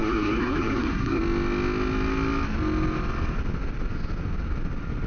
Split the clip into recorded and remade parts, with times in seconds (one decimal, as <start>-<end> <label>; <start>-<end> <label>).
0.0-1.2 remade; 1.2-5.1 recorded